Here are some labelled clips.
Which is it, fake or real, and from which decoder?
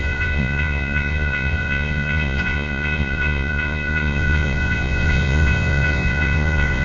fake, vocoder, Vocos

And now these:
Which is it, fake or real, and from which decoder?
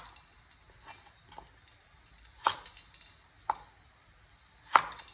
real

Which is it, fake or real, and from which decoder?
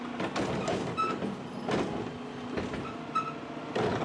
real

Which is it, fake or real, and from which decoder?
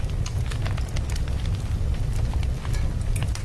real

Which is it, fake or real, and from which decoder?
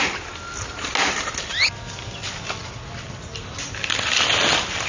real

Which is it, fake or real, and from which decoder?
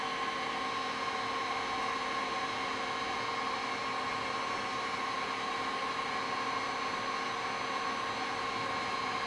real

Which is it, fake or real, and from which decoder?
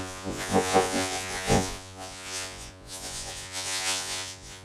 fake, vocoder, Vocos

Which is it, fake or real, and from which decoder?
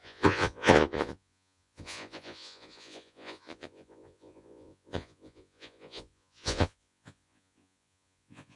fake, vocoder, Vocos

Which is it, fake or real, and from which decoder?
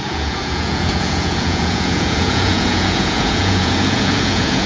fake, vocoder, Vocos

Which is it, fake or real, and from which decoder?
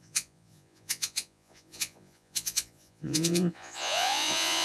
fake, vocoder, Vocos